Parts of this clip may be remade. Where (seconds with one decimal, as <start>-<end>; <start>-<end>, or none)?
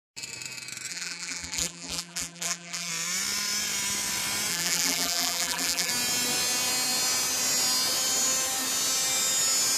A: 0.9-2.9; 4.5-5.9